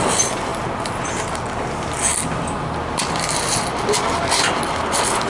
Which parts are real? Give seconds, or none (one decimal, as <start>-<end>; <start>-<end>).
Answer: 0.0-5.3